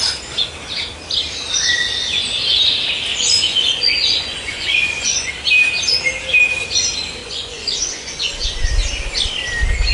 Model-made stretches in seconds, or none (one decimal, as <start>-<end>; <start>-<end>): 3.1-5.3; 7.2-8.7